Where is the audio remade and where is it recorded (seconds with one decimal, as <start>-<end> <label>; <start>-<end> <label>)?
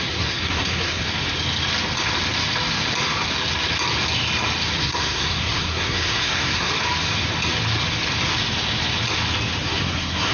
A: 0.0-1.0 remade; 1.0-4.8 recorded; 4.8-6.7 remade; 6.7-9.6 recorded; 9.6-10.3 remade